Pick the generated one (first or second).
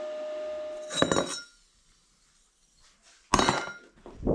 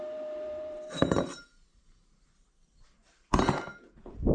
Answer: second